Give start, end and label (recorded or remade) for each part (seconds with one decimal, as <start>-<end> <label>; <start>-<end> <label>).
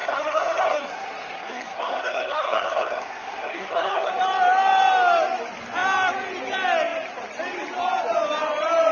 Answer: 0.0-4.1 remade; 4.1-8.9 recorded